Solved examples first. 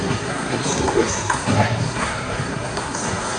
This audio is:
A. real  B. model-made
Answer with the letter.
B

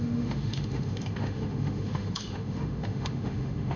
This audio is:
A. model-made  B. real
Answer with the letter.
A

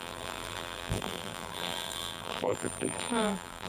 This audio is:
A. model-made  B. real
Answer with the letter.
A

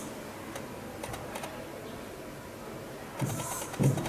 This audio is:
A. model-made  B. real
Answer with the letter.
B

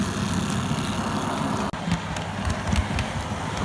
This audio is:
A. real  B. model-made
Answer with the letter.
A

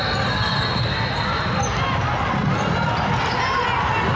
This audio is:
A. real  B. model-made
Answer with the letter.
A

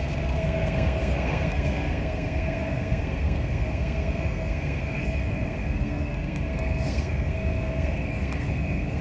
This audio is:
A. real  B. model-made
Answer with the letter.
B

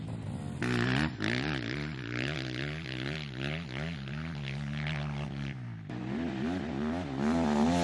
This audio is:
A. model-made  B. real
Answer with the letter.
B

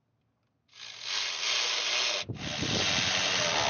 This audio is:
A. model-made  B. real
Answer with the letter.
B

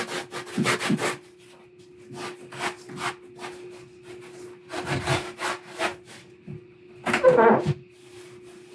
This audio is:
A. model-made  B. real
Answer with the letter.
B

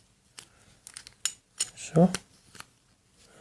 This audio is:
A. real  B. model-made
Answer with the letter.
A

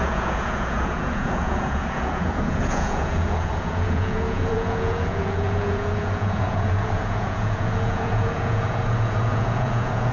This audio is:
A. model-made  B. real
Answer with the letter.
A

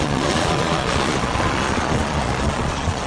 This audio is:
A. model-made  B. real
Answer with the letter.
A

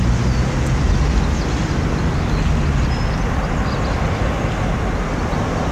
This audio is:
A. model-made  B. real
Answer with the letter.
B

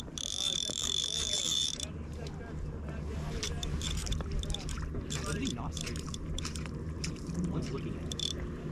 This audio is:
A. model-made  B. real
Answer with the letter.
A